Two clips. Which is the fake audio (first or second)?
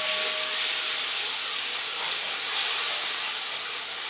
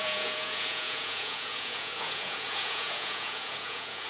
second